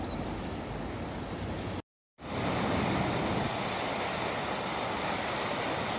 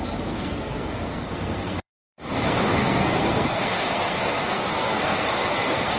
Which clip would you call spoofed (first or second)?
second